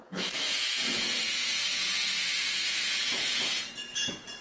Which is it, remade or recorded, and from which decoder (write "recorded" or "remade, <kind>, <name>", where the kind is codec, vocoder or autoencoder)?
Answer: remade, vocoder, Vocos